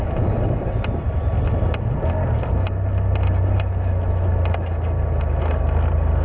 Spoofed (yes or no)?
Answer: no